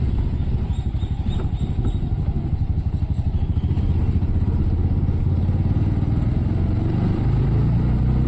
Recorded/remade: recorded